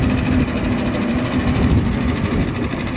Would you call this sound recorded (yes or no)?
no